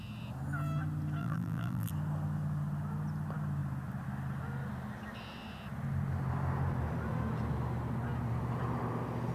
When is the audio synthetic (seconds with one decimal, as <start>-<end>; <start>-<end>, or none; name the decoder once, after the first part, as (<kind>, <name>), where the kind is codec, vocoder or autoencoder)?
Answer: 1.2-1.9 (vocoder, BigVGAN v2)